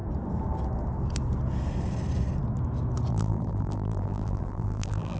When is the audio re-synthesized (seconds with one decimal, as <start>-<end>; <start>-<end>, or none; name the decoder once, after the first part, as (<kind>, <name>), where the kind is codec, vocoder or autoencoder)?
3.1-5.2 (vocoder, BigVGAN v2)